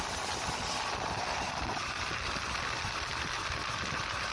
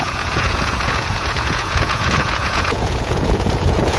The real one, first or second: first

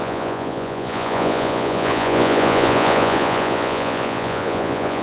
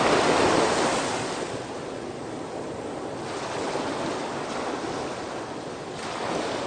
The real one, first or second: second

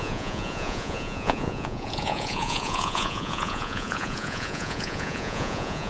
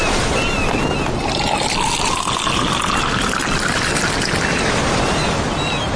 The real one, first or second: second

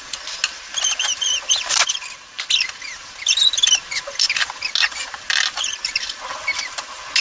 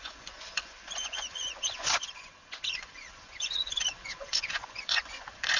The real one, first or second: first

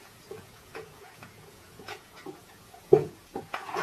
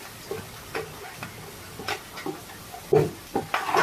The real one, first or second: second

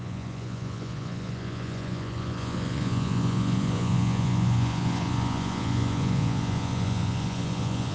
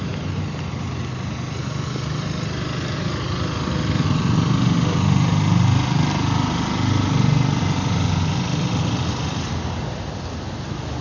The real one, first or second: second